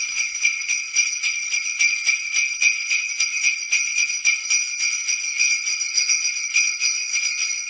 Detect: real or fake real